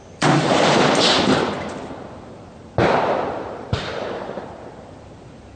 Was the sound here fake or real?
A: fake